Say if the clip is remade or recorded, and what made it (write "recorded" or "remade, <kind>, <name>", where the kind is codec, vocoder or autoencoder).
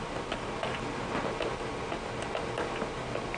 recorded